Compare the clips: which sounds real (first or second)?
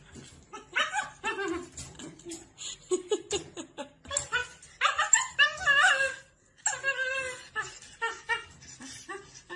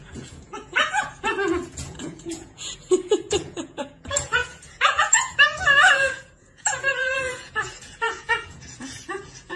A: first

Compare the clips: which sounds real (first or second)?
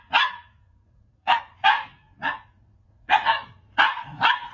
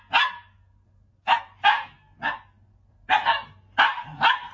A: second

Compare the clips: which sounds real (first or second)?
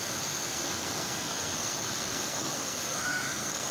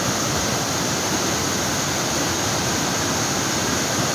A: second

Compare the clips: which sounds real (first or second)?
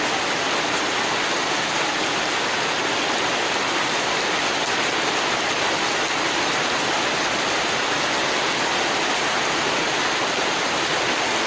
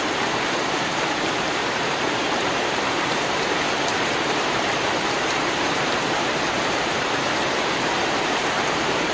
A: first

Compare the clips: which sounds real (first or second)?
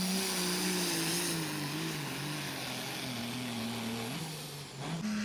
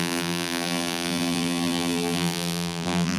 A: first